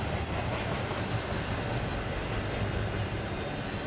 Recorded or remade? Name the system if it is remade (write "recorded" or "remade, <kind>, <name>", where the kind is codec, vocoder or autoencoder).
recorded